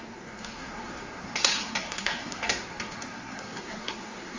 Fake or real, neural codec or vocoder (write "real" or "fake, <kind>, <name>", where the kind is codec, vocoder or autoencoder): fake, codec, SNAC